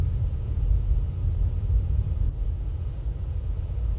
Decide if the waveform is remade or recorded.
remade